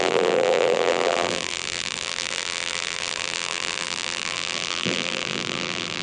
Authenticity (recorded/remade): remade